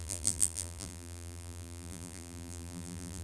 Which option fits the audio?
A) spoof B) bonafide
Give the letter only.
A